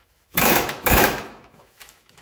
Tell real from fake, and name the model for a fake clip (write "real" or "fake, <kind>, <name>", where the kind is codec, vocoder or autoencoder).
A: fake, autoencoder, DAC-VAE